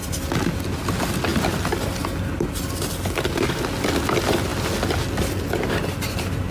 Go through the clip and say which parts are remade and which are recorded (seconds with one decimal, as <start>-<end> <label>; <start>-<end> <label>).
0.0-6.5 recorded